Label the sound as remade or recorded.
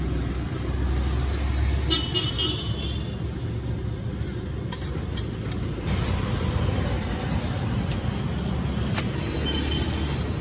recorded